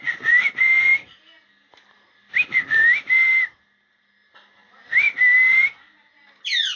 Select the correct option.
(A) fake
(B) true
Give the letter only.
B